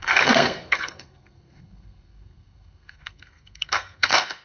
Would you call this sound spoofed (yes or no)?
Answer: yes